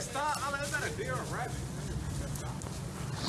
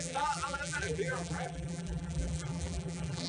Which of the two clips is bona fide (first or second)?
first